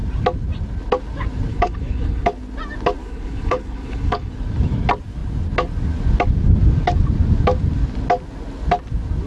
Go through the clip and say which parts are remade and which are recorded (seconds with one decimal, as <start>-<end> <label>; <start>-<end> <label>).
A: 0.0-1.5 recorded; 1.5-2.3 remade; 2.3-3.0 recorded; 3.0-4.3 remade; 4.3-9.3 recorded